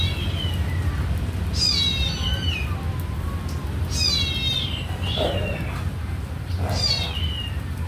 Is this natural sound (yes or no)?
yes